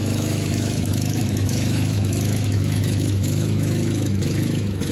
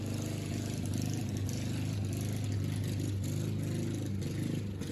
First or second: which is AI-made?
first